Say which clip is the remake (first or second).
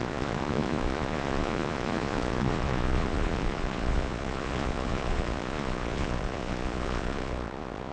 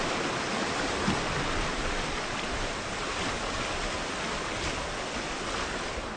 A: first